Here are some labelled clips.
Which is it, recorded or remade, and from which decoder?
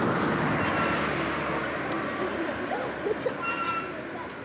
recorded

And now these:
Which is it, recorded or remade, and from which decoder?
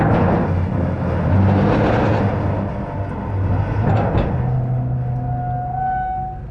recorded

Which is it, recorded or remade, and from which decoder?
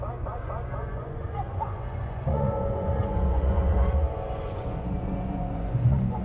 remade, vocoder, Vocos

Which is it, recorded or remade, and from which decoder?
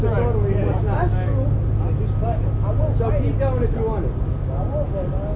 recorded